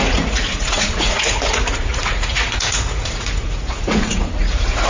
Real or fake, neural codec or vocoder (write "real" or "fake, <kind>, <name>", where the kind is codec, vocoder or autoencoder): fake, vocoder, Vocos